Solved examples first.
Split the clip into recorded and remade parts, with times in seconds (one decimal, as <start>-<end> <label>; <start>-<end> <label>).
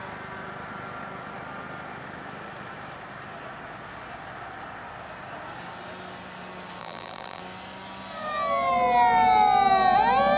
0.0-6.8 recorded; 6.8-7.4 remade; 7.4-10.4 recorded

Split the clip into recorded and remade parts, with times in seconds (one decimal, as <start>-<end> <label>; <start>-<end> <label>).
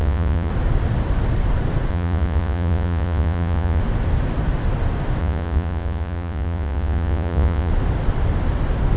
0.0-0.5 remade; 0.5-1.9 recorded; 1.9-3.8 remade; 3.8-5.2 recorded; 5.2-7.7 remade; 7.7-9.0 recorded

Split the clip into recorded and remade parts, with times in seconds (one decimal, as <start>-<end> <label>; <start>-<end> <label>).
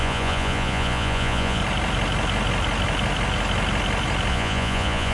0.0-1.6 remade; 1.6-4.3 recorded; 4.3-5.1 remade